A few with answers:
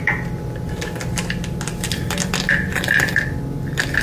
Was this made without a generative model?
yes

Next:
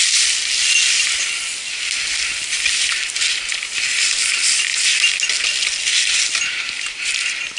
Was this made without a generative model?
yes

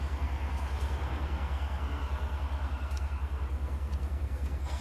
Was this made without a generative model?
no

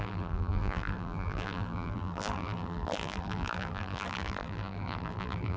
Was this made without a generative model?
no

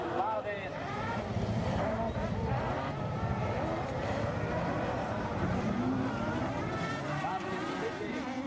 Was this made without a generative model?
no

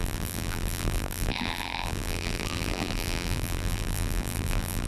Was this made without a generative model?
no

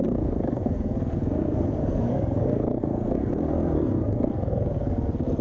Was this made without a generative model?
no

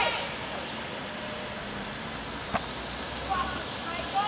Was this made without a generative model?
yes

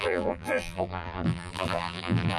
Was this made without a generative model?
no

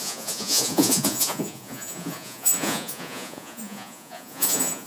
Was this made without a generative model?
no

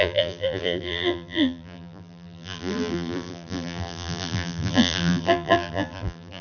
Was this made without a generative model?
no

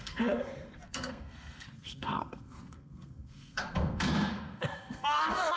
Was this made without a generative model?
no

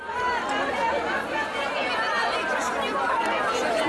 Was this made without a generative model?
yes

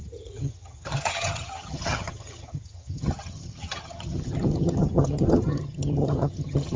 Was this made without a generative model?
no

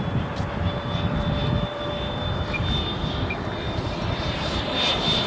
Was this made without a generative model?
no